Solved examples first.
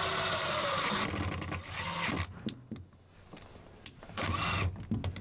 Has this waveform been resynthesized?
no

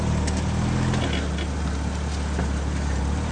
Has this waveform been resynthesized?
no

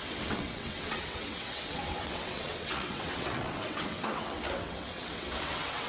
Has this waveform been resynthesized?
yes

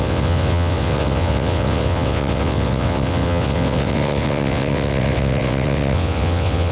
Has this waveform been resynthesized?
yes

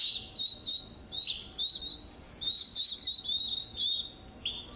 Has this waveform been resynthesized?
no